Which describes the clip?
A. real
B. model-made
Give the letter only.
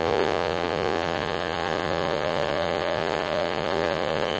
B